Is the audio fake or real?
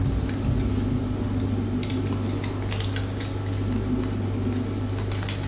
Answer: real